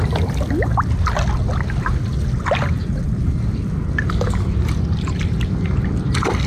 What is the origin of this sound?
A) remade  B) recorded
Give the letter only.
B